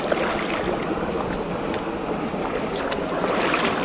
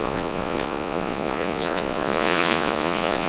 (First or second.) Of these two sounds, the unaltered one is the first